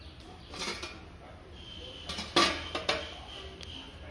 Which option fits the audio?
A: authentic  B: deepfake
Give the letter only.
A